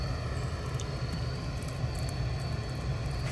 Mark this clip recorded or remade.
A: recorded